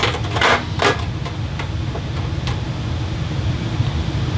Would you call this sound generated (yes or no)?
no